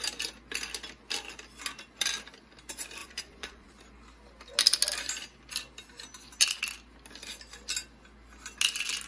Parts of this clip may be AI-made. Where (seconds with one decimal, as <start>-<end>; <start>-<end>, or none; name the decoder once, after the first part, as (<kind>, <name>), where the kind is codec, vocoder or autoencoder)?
3.0-3.7 (vocoder, Vocos)